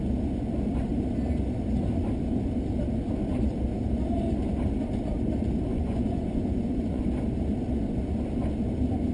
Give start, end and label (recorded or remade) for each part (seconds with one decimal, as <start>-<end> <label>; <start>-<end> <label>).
0.0-5.7 recorded; 5.7-7.0 remade; 7.0-9.1 recorded